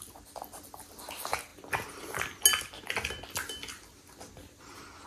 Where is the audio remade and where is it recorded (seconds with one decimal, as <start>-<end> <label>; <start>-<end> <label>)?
0.0-5.1 recorded